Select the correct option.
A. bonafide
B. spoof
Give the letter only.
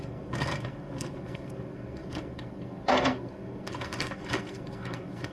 B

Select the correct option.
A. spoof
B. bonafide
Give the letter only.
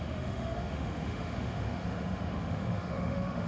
A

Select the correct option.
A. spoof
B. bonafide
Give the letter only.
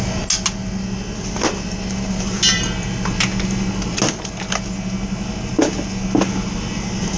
B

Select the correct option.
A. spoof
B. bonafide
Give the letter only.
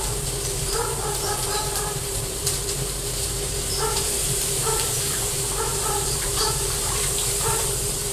A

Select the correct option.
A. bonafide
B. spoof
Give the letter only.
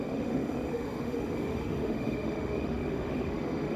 B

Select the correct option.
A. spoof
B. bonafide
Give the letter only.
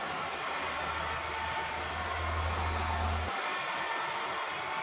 B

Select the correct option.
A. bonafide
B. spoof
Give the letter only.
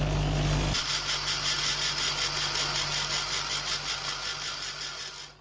A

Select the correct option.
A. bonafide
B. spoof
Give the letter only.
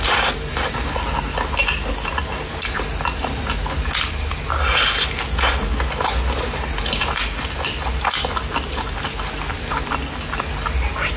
A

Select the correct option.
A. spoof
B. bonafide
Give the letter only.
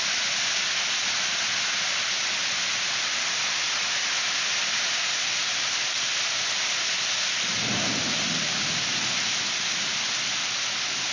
B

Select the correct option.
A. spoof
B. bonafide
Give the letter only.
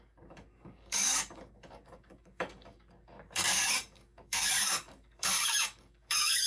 A